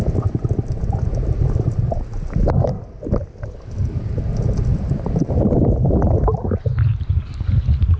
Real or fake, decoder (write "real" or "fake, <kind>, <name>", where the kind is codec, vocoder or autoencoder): real